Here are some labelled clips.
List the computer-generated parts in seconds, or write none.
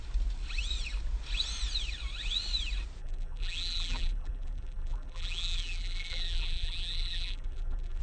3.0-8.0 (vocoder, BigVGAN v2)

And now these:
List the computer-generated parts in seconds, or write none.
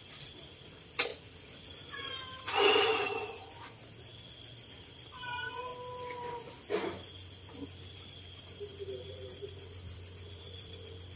0.0-1.1 (vocoder, BigVGAN v2); 2.7-3.4; 4.0-5.7; 7.5-11.2